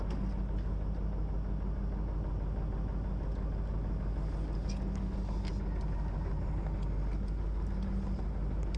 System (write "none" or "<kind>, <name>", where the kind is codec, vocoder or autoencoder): none